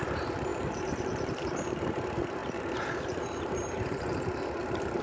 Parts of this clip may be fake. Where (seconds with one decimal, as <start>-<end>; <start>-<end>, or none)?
0.0-5.0